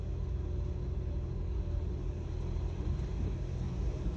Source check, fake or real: real